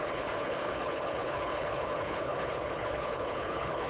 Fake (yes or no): yes